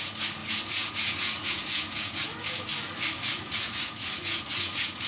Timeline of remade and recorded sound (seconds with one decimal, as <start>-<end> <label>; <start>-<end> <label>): 0.0-2.7 remade; 2.7-3.3 recorded; 3.3-5.1 remade